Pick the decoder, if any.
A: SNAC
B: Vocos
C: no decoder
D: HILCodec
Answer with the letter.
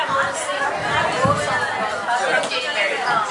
C